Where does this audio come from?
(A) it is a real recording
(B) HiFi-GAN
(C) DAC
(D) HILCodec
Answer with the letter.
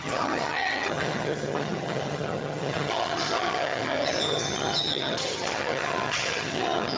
B